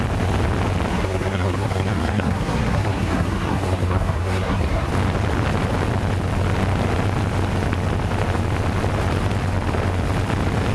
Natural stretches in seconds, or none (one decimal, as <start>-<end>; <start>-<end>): 0.0-0.9; 4.9-10.7